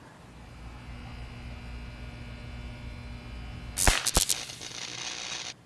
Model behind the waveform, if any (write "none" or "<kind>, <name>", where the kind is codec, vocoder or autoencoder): none